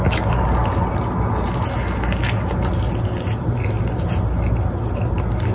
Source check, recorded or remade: recorded